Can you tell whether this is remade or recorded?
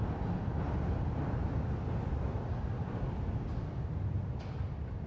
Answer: recorded